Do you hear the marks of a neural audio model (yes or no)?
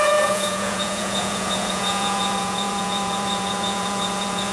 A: yes